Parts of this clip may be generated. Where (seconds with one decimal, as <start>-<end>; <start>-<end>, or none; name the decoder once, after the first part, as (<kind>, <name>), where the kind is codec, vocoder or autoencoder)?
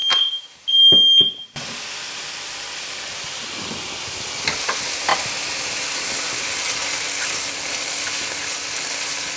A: none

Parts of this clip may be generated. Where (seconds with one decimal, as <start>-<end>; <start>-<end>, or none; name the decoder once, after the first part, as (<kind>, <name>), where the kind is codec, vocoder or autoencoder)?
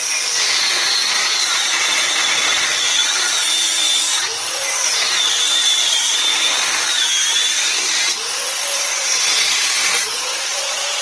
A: 0.6-2.1 (vocoder, Vocos); 5.8-6.3; 8.9-11.0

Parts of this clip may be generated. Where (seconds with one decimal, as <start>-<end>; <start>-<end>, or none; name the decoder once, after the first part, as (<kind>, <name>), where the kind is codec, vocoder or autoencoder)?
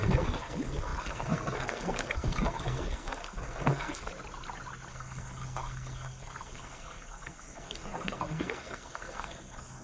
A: 0.0-4.1 (codec, SNAC); 4.9-9.8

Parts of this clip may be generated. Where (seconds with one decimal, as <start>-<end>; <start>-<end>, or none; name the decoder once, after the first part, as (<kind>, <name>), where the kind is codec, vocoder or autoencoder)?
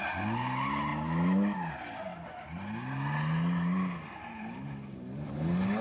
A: none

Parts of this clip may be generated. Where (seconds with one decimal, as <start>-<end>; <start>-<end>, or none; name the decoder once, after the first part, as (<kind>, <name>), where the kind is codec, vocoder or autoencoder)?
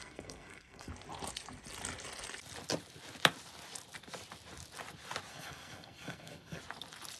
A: 0.0-0.9 (codec, SNAC); 5.3-6.6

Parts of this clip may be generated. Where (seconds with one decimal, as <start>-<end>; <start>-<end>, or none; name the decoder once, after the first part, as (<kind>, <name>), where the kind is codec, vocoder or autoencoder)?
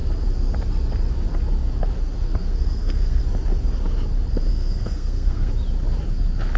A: 2.4-3.2 (codec, SNAC); 4.5-5.5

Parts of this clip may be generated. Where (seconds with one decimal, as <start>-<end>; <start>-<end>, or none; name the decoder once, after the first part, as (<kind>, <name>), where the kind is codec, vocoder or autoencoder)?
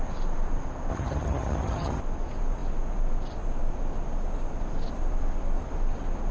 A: 0.9-2.0 (vocoder, HiFi-GAN)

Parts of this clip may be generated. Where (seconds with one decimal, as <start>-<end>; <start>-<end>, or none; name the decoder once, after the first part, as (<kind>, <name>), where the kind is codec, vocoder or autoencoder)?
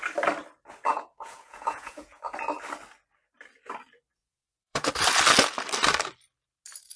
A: 0.9-2.2 (vocoder, Vocos); 4.1-4.9